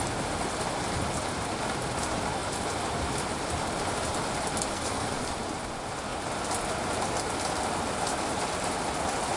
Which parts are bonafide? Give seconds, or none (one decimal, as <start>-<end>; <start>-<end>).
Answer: 0.0-4.7; 5.3-9.4